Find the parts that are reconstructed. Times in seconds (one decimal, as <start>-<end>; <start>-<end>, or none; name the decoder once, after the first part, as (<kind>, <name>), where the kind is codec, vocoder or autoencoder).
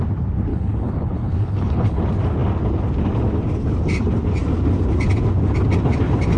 0.5-2.0 (codec, HILCodec)